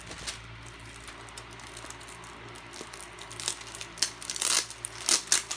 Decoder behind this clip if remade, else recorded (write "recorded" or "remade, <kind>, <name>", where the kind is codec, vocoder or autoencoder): recorded